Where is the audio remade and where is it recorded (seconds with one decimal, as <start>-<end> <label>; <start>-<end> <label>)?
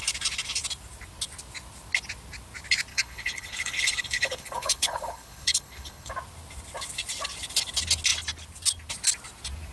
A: 0.0-2.9 recorded; 2.9-6.1 remade; 6.1-9.7 recorded